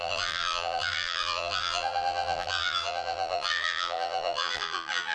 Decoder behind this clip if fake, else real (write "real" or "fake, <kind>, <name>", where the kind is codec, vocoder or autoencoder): fake, vocoder, BigVGAN v2